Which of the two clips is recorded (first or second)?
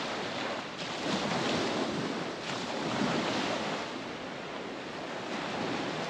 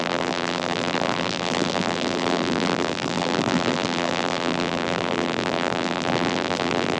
first